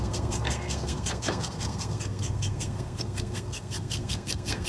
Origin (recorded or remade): remade